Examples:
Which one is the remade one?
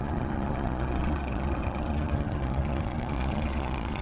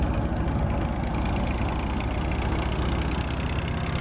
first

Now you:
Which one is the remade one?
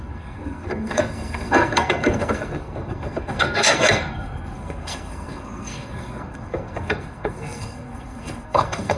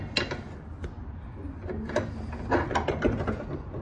first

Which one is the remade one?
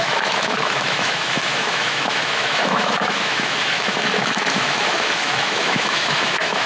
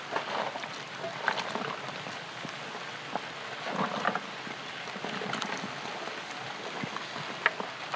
first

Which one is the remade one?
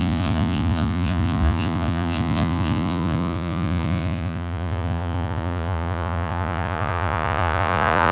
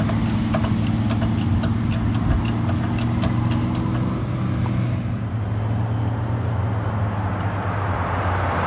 first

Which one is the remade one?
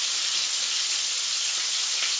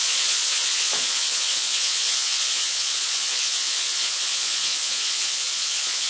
second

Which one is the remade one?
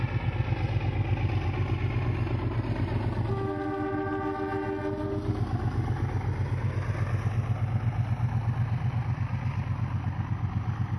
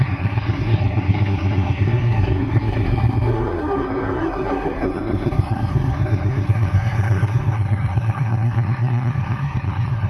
second